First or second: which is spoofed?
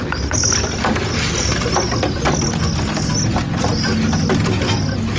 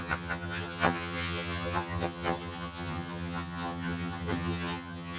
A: second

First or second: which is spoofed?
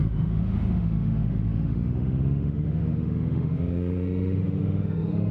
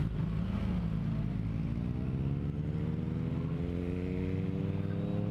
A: first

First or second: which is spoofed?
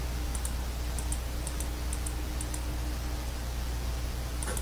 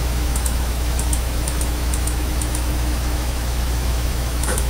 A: second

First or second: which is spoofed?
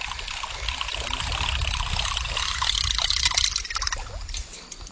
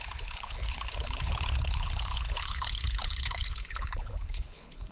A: second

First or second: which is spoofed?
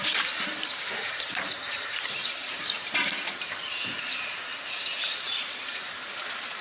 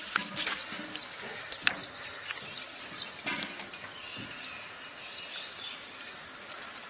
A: first